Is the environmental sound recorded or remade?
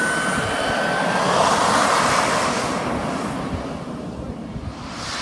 recorded